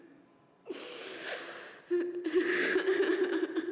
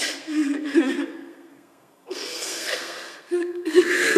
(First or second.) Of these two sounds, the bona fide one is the first